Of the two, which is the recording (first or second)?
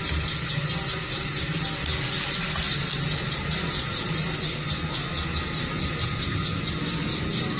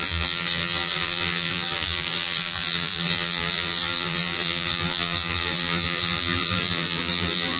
first